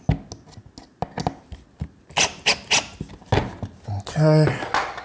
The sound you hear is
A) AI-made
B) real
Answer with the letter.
B